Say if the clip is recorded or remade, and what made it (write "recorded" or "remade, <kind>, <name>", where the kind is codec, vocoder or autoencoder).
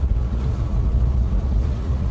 remade, vocoder, Vocos